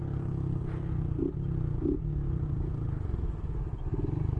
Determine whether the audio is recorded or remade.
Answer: recorded